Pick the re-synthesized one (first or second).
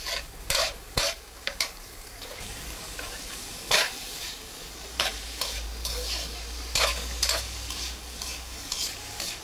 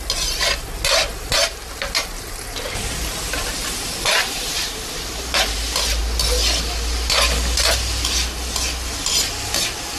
first